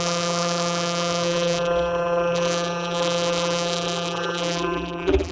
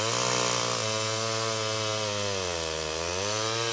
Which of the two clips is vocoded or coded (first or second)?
first